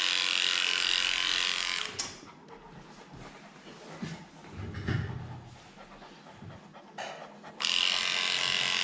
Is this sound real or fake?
real